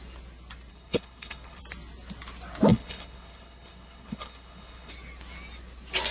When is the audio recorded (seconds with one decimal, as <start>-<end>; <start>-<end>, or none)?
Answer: 0.0-0.7; 1.6-2.7; 4.9-6.1